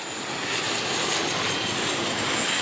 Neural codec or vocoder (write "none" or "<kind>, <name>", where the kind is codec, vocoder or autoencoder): none